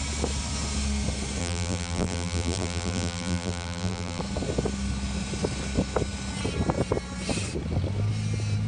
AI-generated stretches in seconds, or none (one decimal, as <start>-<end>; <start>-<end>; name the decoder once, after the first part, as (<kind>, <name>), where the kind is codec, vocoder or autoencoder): 1.4-4.2 (vocoder, BigVGAN v2)

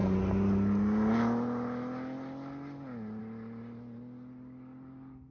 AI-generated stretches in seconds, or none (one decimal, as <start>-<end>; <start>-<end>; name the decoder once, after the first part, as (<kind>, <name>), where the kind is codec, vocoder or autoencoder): none

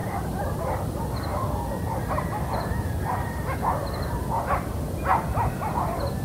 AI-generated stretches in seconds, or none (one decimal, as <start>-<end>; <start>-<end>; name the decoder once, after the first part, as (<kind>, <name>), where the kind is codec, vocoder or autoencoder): 0.0-0.6 (vocoder, BigVGAN v2)

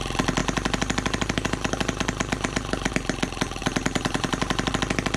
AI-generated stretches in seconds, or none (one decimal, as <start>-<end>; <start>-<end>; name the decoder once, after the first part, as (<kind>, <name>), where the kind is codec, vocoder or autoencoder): 0.4-2.9 (vocoder, BigVGAN v2); 3.6-4.7

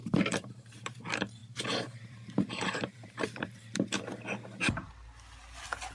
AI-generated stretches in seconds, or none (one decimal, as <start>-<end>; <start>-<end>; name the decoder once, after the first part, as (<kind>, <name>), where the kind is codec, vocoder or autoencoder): 0.0-0.5 (vocoder, BigVGAN v2); 1.4-4.9

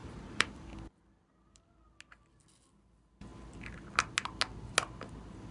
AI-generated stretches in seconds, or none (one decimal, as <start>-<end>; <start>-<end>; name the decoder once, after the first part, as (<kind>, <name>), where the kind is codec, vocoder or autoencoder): 0.0-0.7 (vocoder, BigVGAN v2)

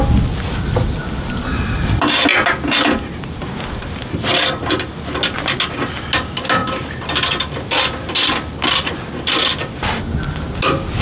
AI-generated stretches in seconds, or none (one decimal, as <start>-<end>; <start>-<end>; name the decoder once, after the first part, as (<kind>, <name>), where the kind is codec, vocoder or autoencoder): 6.6-7.5 (vocoder, BigVGAN v2)